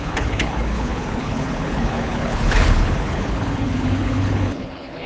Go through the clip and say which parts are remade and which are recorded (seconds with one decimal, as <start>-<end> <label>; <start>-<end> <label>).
0.0-5.1 remade